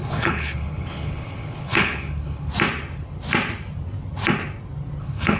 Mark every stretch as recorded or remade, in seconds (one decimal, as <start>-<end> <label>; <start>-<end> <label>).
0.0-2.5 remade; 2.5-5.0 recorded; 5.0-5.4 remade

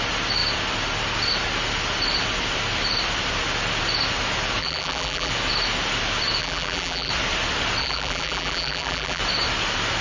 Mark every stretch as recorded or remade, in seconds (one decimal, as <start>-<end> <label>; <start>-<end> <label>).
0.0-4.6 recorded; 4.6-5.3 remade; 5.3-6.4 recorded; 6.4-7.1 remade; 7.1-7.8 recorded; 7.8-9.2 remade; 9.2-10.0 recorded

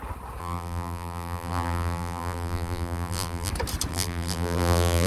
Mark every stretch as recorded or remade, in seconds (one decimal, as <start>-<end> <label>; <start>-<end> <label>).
0.0-0.4 recorded; 0.4-3.5 remade; 3.5-3.9 recorded; 3.9-5.1 remade

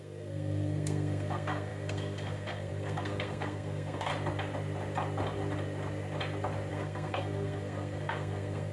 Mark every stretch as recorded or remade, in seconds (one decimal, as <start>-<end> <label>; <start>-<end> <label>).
0.0-4.1 remade; 4.1-6.7 recorded; 6.7-8.7 remade